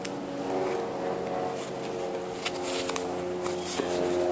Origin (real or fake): real